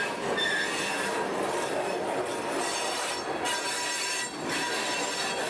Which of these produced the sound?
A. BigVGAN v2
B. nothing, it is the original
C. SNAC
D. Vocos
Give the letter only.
B